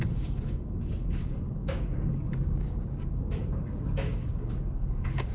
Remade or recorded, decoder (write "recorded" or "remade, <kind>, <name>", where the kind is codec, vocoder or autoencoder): remade, codec, DAC